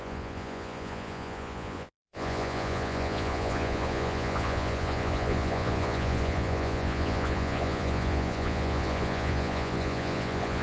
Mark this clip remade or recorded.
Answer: remade